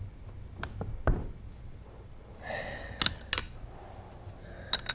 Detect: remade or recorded recorded